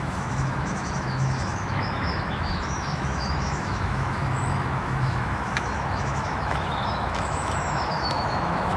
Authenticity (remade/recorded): remade